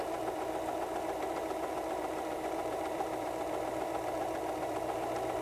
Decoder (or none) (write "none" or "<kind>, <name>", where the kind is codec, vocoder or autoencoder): vocoder, BigVGAN v2